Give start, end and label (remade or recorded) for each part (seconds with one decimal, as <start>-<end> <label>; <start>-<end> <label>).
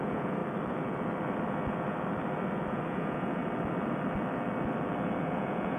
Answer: 0.0-0.4 remade; 0.4-2.7 recorded; 2.7-3.4 remade; 3.4-5.2 recorded; 5.2-5.8 remade